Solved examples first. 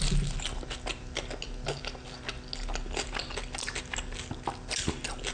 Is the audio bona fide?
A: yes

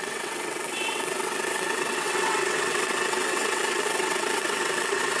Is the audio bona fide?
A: no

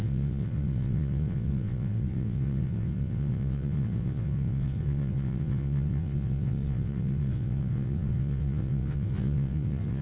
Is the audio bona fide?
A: no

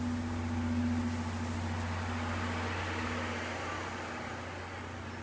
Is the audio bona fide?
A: yes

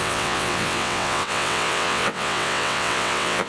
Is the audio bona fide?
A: no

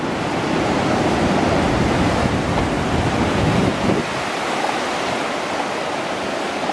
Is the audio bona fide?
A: yes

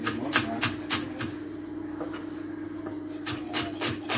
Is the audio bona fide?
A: yes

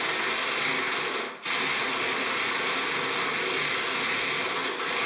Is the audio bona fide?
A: yes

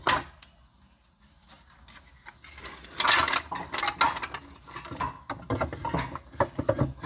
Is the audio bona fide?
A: yes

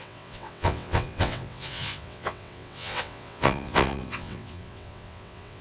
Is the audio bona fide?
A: no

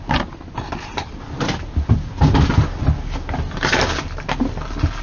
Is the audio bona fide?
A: yes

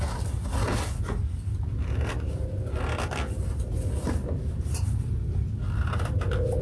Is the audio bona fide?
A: yes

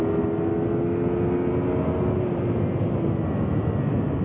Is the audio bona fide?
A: yes